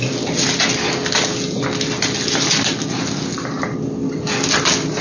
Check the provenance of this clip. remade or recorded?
recorded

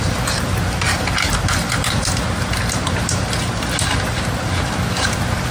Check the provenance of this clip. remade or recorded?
recorded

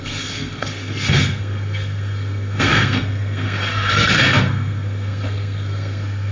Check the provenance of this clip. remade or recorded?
remade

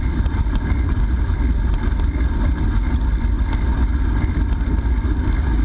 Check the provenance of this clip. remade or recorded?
recorded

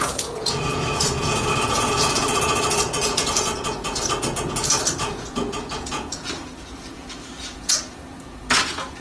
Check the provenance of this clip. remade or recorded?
remade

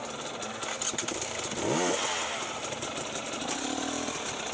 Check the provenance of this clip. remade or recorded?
recorded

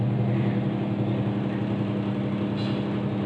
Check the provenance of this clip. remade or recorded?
recorded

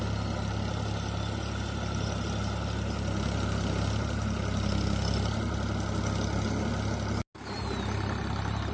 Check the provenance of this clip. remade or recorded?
recorded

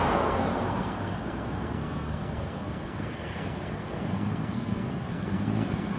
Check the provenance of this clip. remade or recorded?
remade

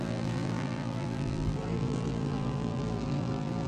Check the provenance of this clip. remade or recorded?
remade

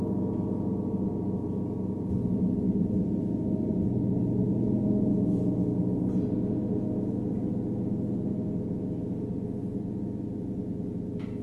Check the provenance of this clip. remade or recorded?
recorded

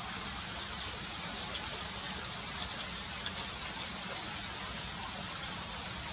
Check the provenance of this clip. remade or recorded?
recorded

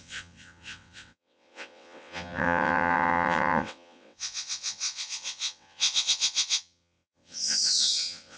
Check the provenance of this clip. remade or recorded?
remade